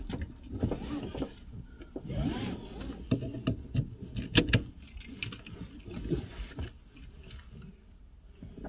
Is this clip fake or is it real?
real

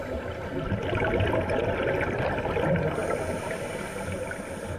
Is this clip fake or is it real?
real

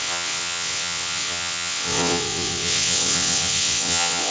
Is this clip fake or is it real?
fake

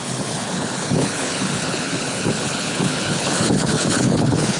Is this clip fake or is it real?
fake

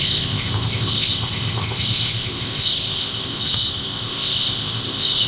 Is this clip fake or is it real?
fake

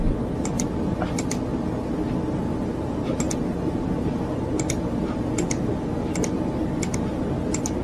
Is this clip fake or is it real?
real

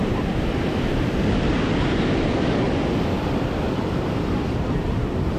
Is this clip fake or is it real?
real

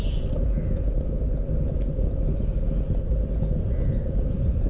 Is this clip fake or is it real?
real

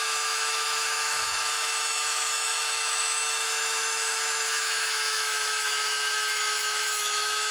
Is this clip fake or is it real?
fake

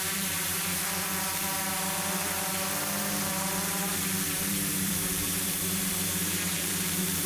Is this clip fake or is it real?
fake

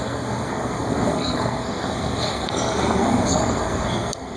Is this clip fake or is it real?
fake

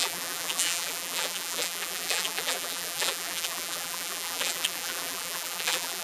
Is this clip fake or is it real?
fake